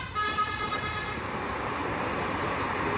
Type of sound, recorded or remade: remade